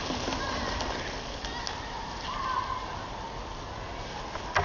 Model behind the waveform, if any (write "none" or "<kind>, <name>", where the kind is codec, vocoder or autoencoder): none